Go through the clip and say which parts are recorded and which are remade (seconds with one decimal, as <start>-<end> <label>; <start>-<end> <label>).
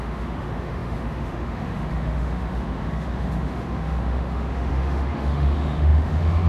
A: 0.0-6.5 remade